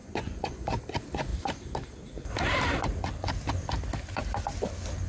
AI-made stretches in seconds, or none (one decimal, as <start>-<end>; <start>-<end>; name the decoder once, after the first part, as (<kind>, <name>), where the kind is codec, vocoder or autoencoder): 0.0-0.8 (vocoder, Vocos)